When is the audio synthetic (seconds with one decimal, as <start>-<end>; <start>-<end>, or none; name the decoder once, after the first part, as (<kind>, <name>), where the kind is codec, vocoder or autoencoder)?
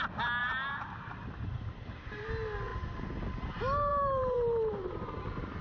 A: 0.4-2.3 (vocoder, BigVGAN v2); 3.9-5.6